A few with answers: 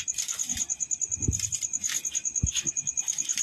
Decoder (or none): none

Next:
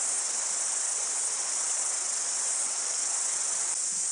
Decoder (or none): none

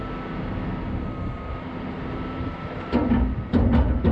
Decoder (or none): none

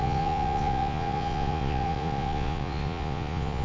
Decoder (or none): vocoder, Vocos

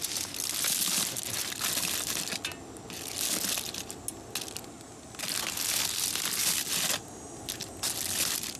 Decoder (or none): none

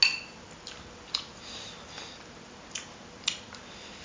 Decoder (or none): none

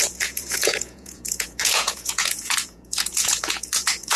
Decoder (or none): vocoder, Vocos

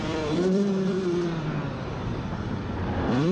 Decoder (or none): vocoder, BigVGAN v2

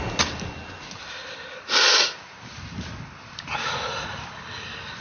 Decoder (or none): none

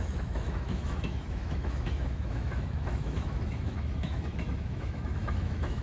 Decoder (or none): autoencoder, DAC-VAE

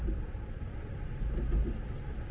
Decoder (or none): none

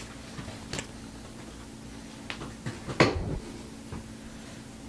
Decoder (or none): none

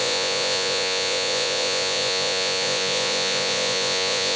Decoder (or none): vocoder, Vocos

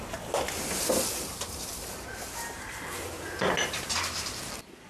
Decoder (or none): none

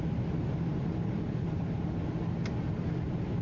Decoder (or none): none